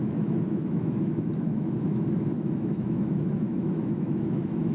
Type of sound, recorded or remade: remade